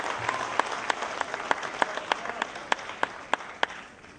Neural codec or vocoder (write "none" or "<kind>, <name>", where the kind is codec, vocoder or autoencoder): none